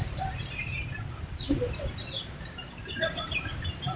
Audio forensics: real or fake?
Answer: fake